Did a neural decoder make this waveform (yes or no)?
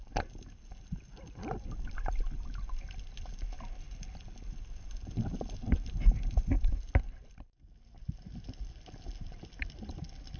no